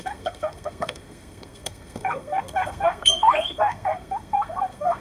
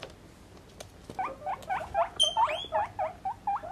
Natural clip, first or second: second